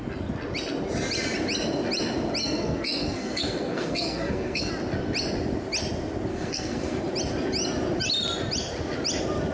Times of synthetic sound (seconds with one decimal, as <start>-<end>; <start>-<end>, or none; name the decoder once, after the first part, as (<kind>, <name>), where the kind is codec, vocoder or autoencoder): 2.4-4.7 (codec, SNAC); 6.3-7.0